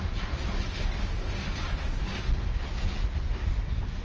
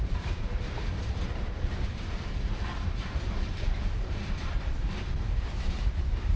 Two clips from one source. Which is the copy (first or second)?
second